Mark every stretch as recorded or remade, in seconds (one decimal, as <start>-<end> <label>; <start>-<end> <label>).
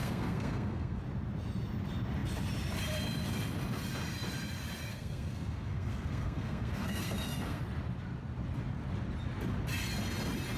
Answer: 0.0-1.0 remade; 1.0-4.9 recorded; 4.9-7.6 remade; 7.6-10.6 recorded